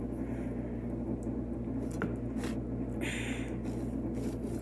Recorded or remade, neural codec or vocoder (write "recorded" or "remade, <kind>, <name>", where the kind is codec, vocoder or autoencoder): recorded